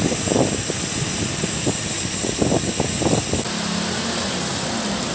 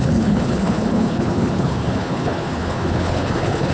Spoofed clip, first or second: second